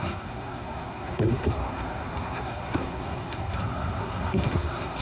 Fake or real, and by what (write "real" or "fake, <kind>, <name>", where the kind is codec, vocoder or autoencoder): fake, codec, SNAC